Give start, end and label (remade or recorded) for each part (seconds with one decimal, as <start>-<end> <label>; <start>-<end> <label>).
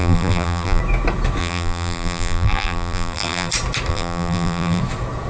0.0-0.8 remade; 0.8-1.4 recorded; 1.4-3.5 remade; 3.5-3.9 recorded; 3.9-4.8 remade; 4.8-5.3 recorded